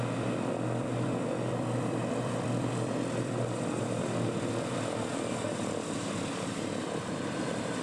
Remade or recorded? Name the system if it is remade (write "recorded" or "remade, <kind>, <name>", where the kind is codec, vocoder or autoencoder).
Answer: remade, vocoder, BigVGAN v2